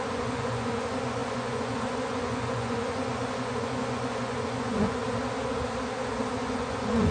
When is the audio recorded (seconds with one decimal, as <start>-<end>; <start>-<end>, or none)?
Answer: 5.0-6.4